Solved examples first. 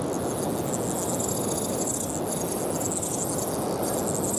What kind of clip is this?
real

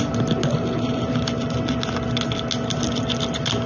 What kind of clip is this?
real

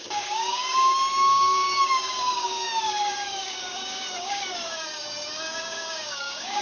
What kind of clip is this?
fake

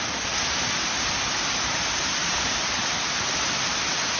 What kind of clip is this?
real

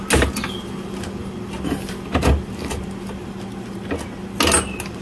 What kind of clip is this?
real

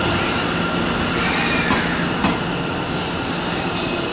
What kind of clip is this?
real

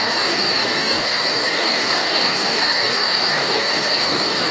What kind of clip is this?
fake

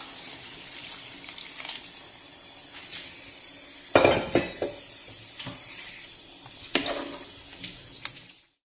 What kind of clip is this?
real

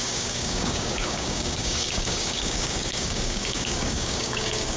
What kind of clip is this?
fake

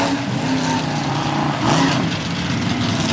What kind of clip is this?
real